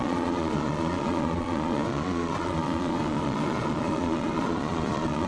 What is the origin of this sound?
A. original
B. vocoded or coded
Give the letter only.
B